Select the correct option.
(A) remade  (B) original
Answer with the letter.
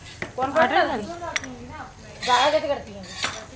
B